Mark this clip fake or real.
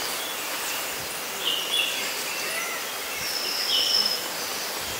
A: real